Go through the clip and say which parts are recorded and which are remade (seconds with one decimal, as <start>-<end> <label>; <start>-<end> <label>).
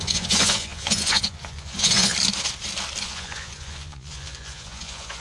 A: 0.0-2.1 remade; 2.1-3.0 recorded; 3.0-5.2 remade